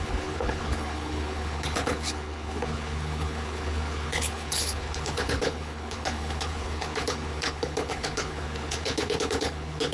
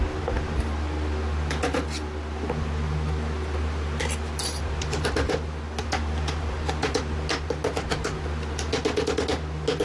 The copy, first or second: first